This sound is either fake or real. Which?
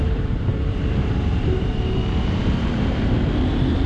fake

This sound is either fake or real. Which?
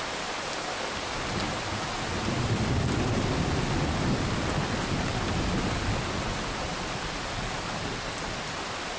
real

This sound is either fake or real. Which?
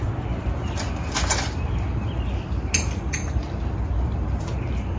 real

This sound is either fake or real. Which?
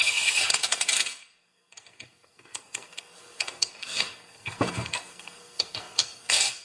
fake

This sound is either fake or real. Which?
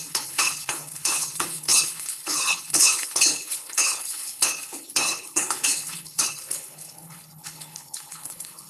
fake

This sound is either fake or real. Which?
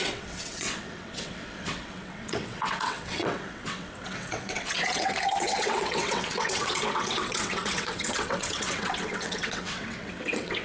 fake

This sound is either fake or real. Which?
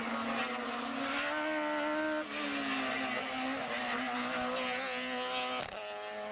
real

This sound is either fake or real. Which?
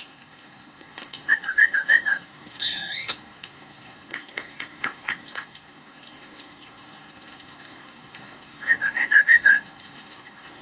fake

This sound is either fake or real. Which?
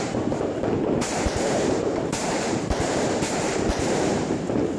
fake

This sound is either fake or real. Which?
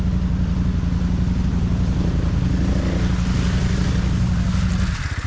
real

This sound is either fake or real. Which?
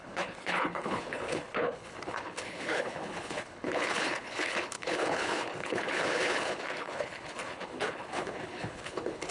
fake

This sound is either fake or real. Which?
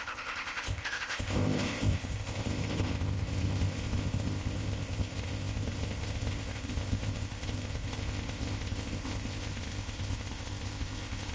fake